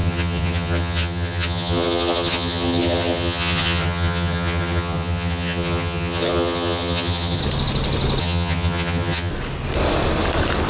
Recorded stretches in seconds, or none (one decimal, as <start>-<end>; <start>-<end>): 7.4-8.2; 9.3-10.7